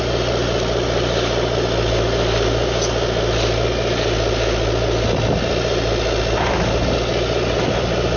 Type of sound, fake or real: real